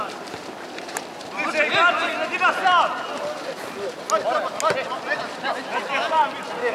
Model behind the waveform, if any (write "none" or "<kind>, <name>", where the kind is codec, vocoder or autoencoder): none